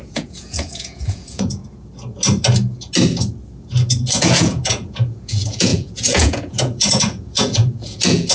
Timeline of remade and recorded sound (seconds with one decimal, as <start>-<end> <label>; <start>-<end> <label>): 0.0-1.6 remade; 1.6-4.1 recorded; 4.1-8.3 remade